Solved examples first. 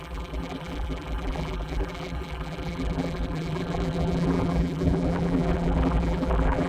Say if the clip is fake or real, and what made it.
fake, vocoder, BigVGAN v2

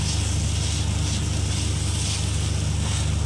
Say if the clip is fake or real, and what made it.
real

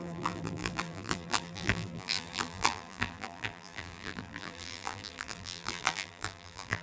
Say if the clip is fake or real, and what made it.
fake, vocoder, BigVGAN v2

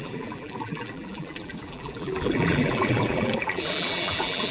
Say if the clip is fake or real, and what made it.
fake, vocoder, BigVGAN v2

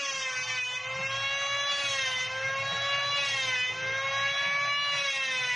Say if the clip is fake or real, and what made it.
real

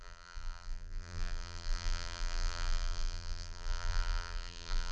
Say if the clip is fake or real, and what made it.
fake, vocoder, BigVGAN v2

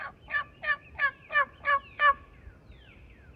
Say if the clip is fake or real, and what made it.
real